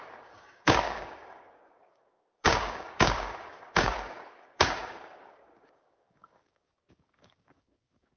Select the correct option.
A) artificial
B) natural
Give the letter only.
A